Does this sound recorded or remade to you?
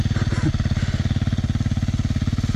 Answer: recorded